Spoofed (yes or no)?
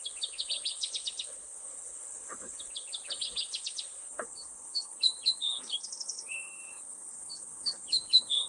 yes